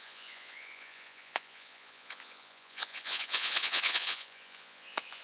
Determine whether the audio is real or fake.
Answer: fake